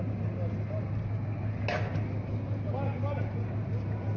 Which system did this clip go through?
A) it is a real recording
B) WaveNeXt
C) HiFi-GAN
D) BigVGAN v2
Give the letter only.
A